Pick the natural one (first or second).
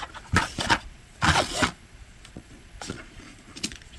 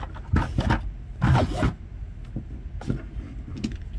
second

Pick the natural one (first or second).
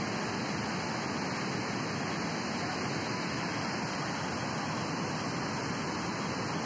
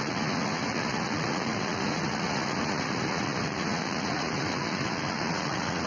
first